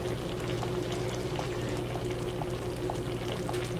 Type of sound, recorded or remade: recorded